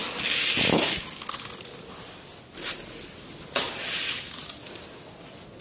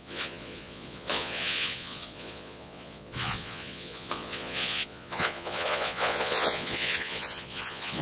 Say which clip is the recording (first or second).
first